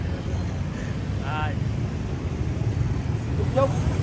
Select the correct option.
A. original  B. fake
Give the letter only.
A